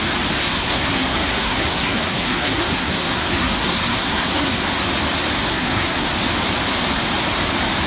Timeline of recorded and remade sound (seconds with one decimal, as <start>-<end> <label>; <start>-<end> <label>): 0.0-0.4 recorded; 0.4-4.6 remade; 4.6-5.5 recorded; 5.5-6.1 remade; 6.1-7.9 recorded